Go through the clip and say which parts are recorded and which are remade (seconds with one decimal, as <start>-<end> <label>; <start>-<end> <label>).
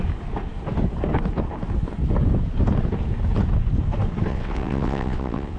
0.0-4.3 recorded; 4.3-5.6 remade